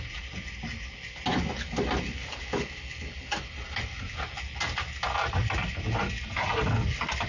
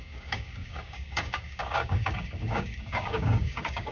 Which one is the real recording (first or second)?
first